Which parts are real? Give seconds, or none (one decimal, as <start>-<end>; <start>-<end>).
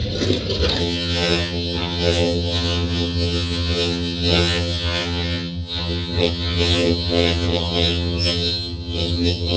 0.0-0.8